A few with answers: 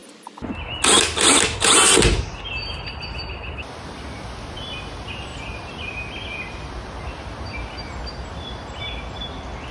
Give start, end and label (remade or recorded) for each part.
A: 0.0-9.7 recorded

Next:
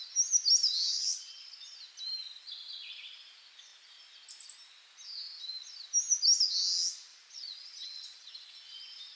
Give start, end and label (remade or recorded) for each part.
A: 0.0-0.9 recorded; 0.9-1.5 remade; 1.5-7.1 recorded; 7.1-8.3 remade; 8.3-9.2 recorded

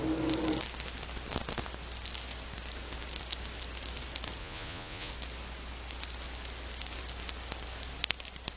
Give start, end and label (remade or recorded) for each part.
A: 0.0-4.4 recorded; 4.4-5.1 remade; 5.1-8.6 recorded

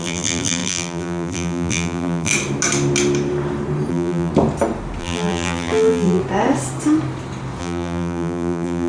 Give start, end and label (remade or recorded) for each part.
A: 0.0-2.3 remade; 2.3-3.9 recorded; 3.9-4.3 remade; 4.3-5.0 recorded; 5.0-6.2 remade; 6.2-7.6 recorded; 7.6-8.9 remade

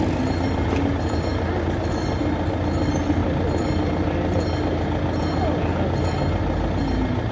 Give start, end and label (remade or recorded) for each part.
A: 0.0-7.3 recorded

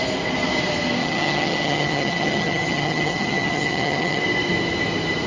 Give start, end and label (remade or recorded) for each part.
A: 0.0-1.0 recorded; 1.0-4.2 remade; 4.2-5.3 recorded

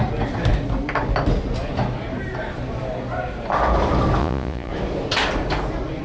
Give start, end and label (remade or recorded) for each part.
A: 0.0-4.2 recorded; 4.2-4.7 remade; 4.7-6.0 recorded